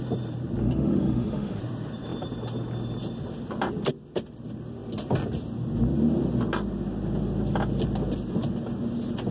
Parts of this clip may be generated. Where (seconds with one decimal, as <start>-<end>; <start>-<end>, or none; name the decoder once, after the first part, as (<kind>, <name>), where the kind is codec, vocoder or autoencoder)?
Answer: 0.6-1.6 (autoencoder, DAC-VAE)